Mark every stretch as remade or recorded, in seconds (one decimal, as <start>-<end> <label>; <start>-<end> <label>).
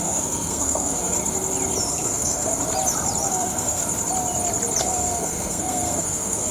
0.0-1.2 remade; 1.2-1.9 recorded; 1.9-2.5 remade; 2.5-3.3 recorded; 3.3-3.8 remade; 3.8-4.8 recorded; 4.8-6.5 remade